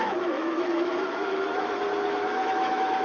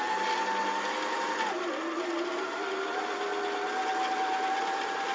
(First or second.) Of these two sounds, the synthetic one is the first